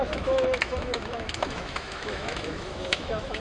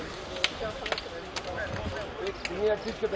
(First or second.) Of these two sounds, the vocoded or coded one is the first